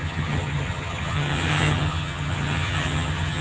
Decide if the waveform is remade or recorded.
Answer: remade